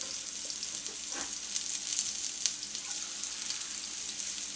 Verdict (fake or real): real